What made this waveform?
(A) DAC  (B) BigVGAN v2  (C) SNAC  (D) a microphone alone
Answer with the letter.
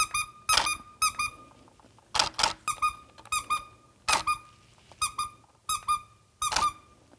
D